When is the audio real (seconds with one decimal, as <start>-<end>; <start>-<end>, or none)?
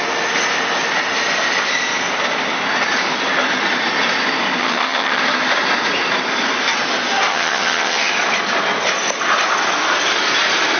0.0-4.6; 5.2-7.3; 8.1-10.8